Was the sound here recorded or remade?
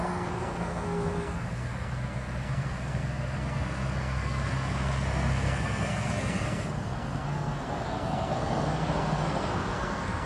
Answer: remade